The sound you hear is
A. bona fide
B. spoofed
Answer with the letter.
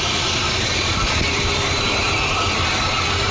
A